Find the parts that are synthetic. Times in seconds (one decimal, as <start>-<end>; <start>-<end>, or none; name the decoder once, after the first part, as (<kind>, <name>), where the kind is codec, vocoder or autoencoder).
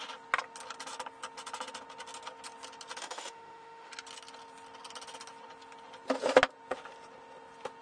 3.0-3.9 (autoencoder, DAC-VAE)